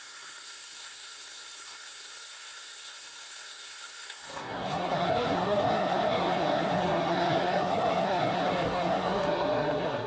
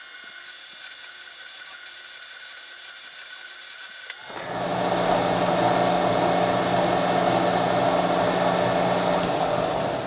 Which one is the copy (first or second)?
first